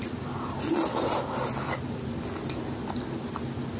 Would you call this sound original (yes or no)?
yes